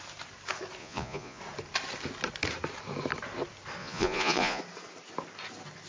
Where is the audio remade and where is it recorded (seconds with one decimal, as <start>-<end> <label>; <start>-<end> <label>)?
0.0-0.8 recorded; 0.8-1.4 remade; 1.4-3.8 recorded; 3.8-4.6 remade; 4.6-5.9 recorded